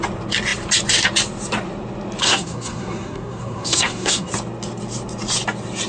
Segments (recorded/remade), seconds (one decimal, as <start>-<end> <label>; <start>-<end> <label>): 0.0-2.2 recorded; 2.2-4.3 remade; 4.3-5.9 recorded